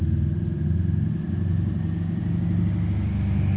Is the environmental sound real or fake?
real